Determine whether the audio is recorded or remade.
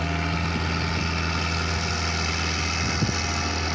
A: recorded